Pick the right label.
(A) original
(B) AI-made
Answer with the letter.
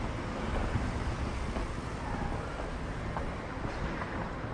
A